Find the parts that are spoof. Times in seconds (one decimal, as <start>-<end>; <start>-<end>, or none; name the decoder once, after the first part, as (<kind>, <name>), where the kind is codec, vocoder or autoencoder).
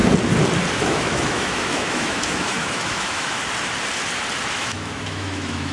0.8-3.4 (autoencoder, DAC-VAE); 4.5-5.7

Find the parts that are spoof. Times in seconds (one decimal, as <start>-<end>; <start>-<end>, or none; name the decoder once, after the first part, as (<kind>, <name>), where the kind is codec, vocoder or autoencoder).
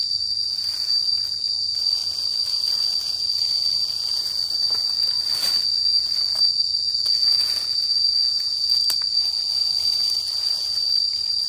7.2-8.9 (vocoder, Vocos)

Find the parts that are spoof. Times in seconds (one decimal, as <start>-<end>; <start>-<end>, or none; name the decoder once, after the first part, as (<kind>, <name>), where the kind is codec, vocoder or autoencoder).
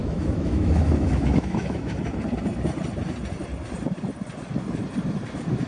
0.0-2.0 (autoencoder, DAC-VAE)